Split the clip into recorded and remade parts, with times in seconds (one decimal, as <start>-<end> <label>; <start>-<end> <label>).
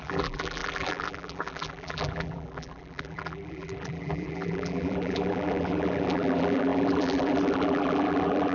0.0-8.5 remade